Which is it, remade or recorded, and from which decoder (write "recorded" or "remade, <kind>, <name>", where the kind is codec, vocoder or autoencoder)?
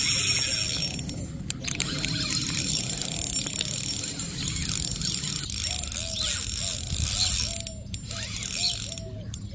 recorded